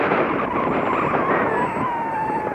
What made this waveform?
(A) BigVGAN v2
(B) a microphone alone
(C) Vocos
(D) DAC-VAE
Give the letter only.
B